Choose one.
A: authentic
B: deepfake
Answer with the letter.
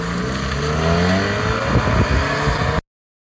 A